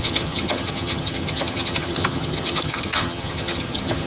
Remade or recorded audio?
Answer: remade